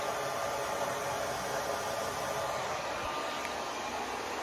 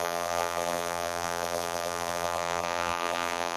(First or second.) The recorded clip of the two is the first